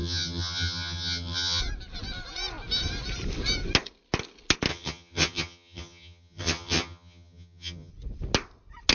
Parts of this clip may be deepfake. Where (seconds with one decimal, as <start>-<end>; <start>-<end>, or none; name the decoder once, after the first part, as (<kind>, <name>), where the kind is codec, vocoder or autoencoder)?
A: 0.0-1.6 (vocoder, HiFi-GAN); 4.7-7.9